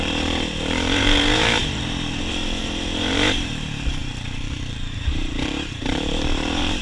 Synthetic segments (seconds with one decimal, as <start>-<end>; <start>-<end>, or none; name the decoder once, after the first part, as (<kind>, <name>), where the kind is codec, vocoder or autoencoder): 0.0-6.8 (vocoder, BigVGAN v2)